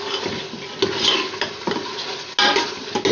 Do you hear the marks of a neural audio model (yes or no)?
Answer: no